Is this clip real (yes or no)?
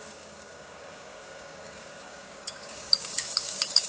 no